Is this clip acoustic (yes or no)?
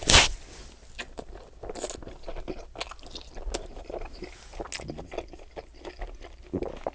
yes